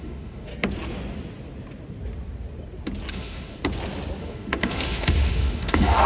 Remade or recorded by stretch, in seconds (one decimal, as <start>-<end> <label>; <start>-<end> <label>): 0.0-0.5 remade; 0.5-3.1 recorded; 3.1-3.6 remade; 3.6-4.2 recorded; 4.2-6.1 remade